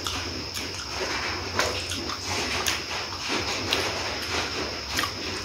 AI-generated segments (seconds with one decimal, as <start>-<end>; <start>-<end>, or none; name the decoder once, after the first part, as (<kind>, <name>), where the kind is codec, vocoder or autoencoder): none